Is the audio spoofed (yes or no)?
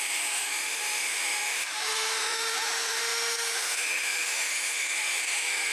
yes